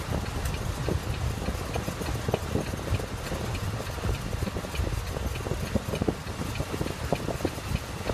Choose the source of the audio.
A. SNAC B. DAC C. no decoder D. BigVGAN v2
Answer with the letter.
C